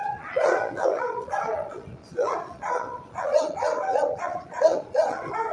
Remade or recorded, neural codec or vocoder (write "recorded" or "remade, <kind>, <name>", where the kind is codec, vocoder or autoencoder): remade, vocoder, Vocos